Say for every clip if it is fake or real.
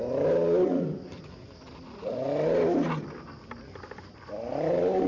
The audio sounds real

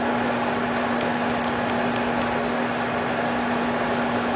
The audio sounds real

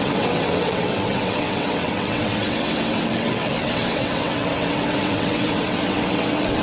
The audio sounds fake